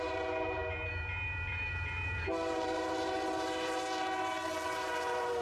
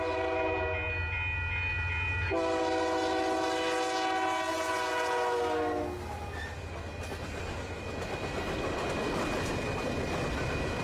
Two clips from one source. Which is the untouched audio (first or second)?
second